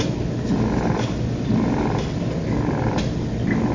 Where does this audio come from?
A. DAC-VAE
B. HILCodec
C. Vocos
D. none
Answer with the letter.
D